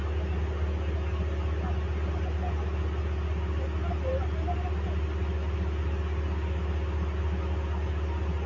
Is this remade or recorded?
recorded